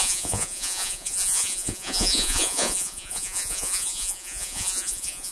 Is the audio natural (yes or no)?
no